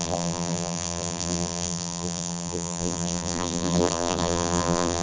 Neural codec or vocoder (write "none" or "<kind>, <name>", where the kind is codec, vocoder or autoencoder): vocoder, BigVGAN v2